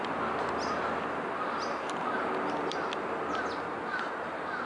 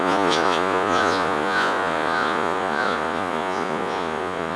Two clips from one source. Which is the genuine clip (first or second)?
first